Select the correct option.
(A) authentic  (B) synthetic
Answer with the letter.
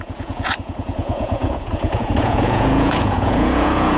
B